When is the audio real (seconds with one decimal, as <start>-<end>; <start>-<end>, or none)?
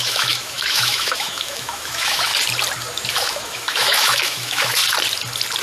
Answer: 2.3-3.1; 4.8-5.6